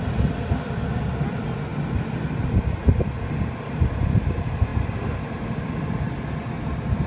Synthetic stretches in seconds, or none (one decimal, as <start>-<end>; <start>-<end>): none